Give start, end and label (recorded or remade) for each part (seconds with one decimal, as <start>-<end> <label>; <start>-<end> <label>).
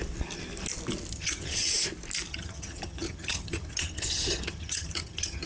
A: 0.0-1.1 recorded; 1.1-1.7 remade; 1.7-2.3 recorded; 2.3-5.5 remade